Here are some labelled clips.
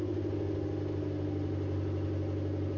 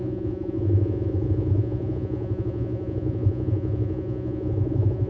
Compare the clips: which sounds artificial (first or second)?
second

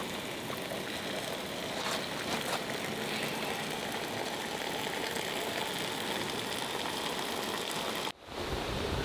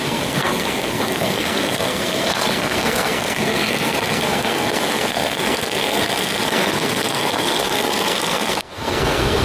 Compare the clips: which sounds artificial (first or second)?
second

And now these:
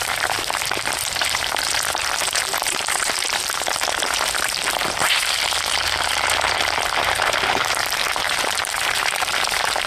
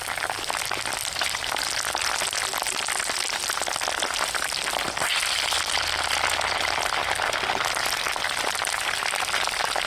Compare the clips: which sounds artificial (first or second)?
first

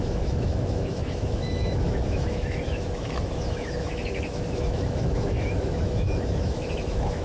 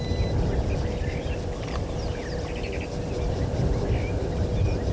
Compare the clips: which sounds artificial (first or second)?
first